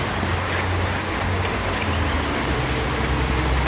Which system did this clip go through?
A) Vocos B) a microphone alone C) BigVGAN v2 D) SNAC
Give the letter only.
B